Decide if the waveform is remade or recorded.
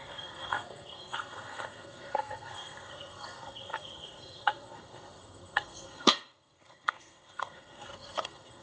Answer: remade